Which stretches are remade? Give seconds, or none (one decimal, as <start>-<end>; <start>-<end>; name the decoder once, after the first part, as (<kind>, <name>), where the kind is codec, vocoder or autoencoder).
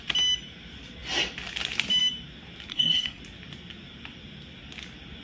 2.7-3.2 (codec, SNAC)